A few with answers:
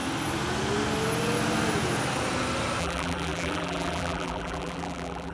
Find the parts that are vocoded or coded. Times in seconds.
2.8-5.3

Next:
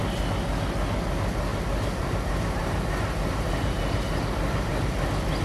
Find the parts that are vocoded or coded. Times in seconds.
1.5-4.7